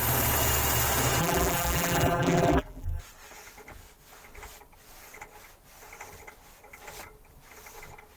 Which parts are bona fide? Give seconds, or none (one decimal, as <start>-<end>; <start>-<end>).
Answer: 0.0-1.2; 3.0-8.2